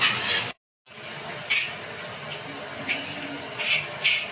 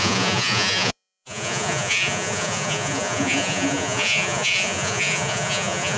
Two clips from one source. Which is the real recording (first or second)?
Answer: first